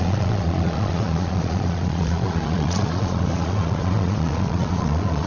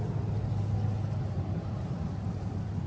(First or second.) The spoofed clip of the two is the first